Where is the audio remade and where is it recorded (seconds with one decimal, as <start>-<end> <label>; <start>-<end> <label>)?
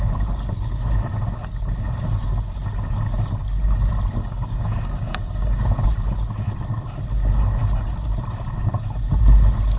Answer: 0.0-4.2 recorded; 4.2-5.7 remade; 5.7-9.8 recorded